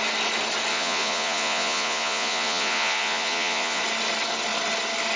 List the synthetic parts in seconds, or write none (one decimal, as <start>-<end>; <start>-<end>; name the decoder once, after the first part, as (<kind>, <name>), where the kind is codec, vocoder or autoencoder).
0.7-3.8 (vocoder, Vocos)